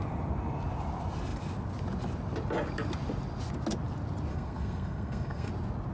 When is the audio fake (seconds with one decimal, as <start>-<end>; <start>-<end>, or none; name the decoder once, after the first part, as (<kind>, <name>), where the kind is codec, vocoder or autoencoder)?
4.3-5.5 (codec, SNAC)